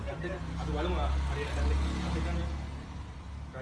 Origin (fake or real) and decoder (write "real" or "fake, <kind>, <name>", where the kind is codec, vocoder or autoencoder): real